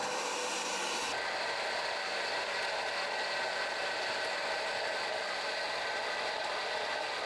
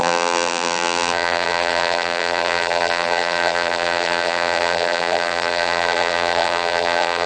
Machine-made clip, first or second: second